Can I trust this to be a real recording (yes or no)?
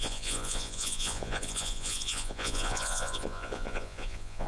no